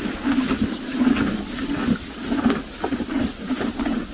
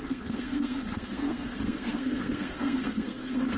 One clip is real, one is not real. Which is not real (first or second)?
second